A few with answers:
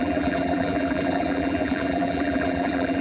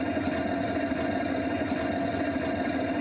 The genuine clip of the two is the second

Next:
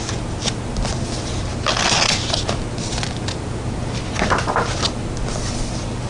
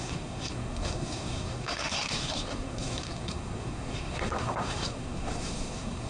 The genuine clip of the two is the first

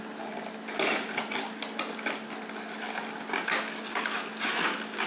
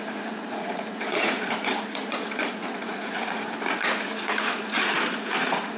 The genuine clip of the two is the first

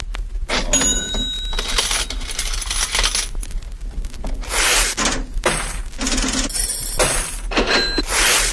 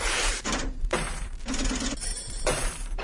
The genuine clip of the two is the first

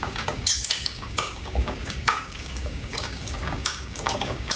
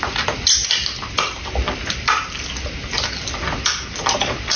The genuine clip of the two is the second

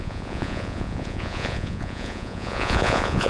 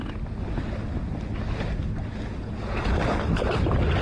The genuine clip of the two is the second